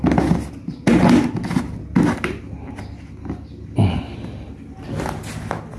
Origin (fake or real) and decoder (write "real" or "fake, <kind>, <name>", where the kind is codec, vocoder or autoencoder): real